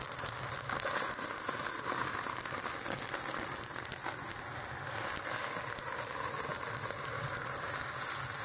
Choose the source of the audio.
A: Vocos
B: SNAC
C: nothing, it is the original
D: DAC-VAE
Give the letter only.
C